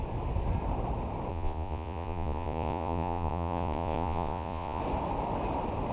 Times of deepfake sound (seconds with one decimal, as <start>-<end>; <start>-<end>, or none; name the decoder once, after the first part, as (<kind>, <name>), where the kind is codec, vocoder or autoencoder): 1.3-4.8 (vocoder, Vocos)